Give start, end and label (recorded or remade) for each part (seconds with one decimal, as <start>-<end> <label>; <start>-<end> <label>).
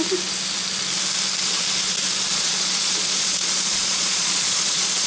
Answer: 0.0-2.3 recorded; 2.3-5.1 remade